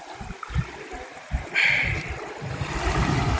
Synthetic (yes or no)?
no